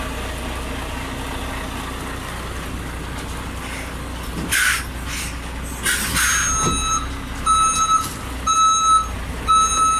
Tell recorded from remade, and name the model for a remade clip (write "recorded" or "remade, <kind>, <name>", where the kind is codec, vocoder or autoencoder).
recorded